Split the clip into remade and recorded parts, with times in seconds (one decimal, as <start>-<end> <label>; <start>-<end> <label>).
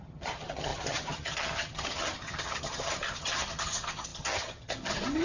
0.0-5.2 remade